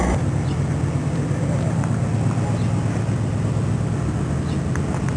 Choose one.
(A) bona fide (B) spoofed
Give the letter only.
A